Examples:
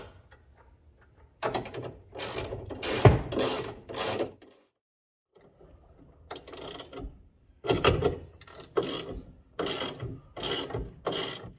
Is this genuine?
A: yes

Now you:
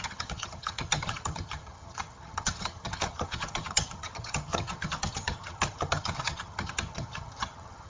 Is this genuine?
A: no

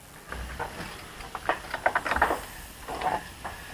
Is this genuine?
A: yes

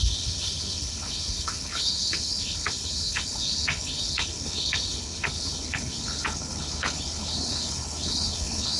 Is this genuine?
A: no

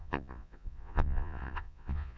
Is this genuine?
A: no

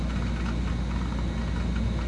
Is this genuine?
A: yes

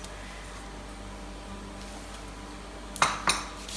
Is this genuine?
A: yes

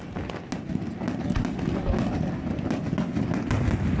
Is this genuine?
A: yes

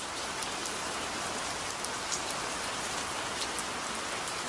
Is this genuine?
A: yes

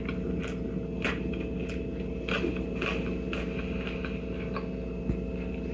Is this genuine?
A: yes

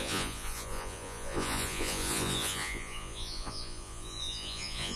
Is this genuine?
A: no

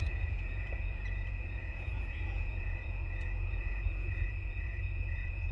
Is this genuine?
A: no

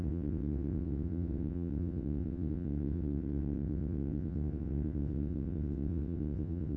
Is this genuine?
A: no